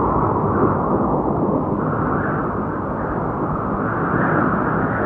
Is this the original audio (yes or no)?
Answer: yes